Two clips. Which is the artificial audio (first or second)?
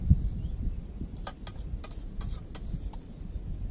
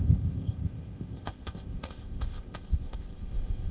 second